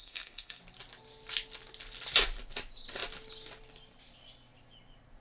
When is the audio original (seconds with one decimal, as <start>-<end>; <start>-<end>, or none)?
0.6-5.2